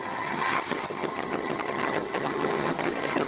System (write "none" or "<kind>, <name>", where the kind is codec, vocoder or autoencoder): vocoder, HiFi-GAN